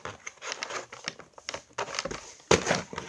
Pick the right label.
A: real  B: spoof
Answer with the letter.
A